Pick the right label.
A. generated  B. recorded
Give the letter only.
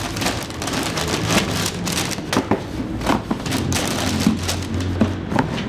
B